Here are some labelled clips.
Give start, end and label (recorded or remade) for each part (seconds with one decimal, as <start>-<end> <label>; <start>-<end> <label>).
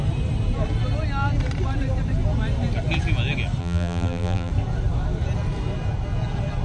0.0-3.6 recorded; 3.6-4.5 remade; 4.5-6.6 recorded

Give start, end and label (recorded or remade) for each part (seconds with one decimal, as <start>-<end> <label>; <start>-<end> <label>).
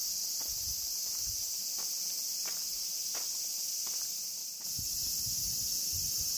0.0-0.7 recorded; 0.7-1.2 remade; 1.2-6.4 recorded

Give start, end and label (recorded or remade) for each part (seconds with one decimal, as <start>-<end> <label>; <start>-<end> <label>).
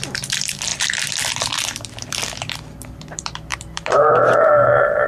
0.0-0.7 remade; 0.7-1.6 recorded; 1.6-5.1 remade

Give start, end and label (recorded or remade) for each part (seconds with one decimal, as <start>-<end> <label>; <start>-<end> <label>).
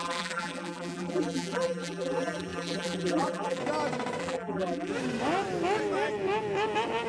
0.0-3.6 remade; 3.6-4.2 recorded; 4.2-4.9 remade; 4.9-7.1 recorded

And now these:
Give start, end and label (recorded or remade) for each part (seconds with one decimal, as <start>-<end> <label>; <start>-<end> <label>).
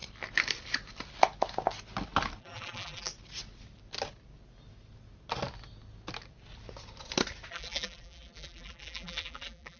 0.0-2.4 recorded; 2.4-3.1 remade; 3.1-7.5 recorded; 7.5-9.8 remade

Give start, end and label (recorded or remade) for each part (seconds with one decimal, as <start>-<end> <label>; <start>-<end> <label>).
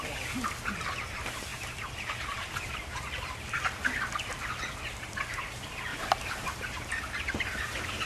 0.0-1.5 recorded; 1.5-3.5 remade; 3.5-5.9 recorded; 5.9-7.0 remade; 7.0-8.1 recorded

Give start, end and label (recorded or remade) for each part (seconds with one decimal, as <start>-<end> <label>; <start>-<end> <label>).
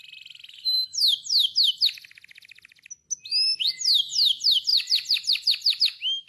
0.0-4.7 recorded; 4.7-5.8 remade; 5.8-6.3 recorded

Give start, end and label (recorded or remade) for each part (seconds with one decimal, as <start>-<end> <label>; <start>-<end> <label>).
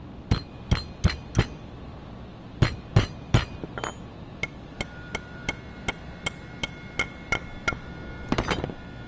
0.0-2.7 recorded; 2.7-3.5 remade; 3.5-9.1 recorded